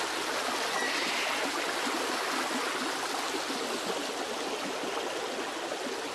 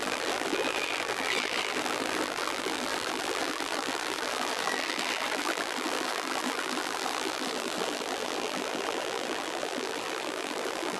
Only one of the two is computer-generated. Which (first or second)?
second